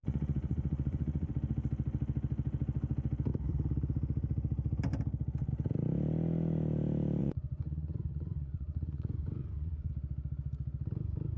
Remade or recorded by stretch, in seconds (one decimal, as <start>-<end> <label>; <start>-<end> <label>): 0.0-1.3 remade; 1.3-7.2 recorded; 7.2-9.9 remade; 9.9-11.4 recorded